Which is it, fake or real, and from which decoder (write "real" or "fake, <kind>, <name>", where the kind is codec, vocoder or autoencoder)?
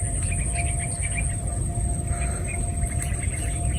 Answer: real